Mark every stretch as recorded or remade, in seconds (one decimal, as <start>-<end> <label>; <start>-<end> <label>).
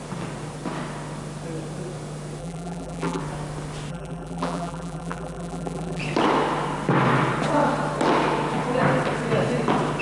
0.0-2.4 recorded; 2.4-3.2 remade; 3.2-3.9 recorded; 3.9-6.0 remade; 6.0-10.0 recorded